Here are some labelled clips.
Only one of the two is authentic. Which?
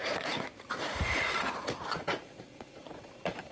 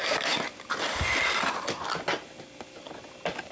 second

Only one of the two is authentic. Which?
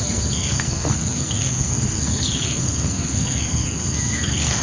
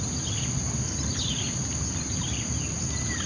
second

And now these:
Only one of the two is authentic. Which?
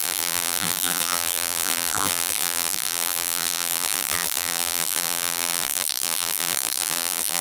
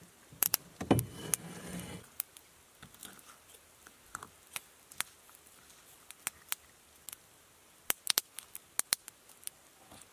second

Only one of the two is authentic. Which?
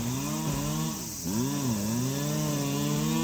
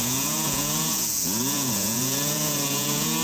first